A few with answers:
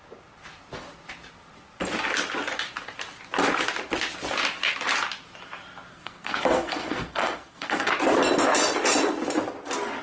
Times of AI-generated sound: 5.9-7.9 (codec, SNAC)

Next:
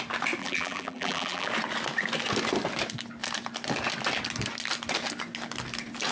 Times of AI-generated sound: 0.4-1.5 (vocoder, BigVGAN v2)